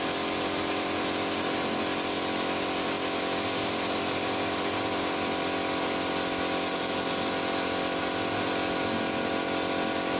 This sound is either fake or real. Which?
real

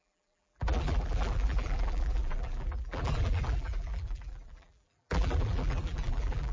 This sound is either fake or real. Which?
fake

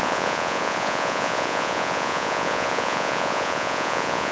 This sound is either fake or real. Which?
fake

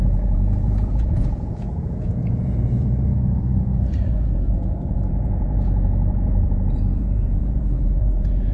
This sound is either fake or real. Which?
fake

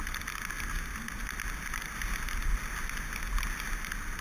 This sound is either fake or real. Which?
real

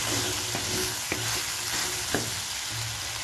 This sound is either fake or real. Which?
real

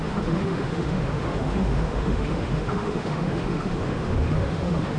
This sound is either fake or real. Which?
fake